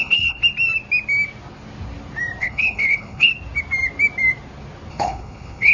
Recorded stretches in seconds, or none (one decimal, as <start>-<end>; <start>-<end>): 0.4-2.4; 3.3-4.9